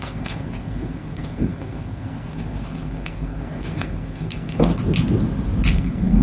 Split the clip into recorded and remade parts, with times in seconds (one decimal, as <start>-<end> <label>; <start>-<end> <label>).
0.0-4.7 remade; 4.7-5.7 recorded; 5.7-6.2 remade